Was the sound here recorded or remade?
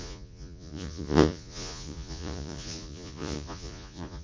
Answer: remade